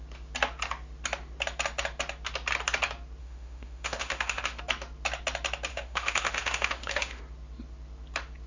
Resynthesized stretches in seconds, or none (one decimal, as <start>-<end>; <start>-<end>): 3.2-4.6; 5.7-7.2